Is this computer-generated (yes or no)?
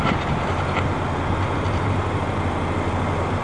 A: no